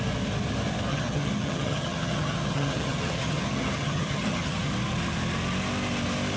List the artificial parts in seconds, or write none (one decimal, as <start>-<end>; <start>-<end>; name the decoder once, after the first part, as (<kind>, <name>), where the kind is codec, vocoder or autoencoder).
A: 0.9-4.7 (vocoder, HiFi-GAN)